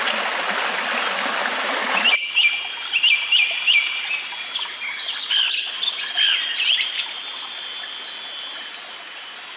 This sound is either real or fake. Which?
real